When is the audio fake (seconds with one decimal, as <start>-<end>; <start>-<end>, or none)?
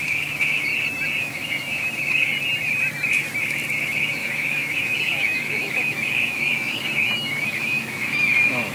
0.0-0.7; 1.2-2.3; 3.8-8.7